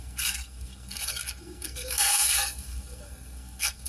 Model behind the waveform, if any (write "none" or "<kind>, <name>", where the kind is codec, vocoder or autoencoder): codec, SNAC